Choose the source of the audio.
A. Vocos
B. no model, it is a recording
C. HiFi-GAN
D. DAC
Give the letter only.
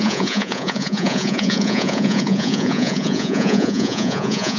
A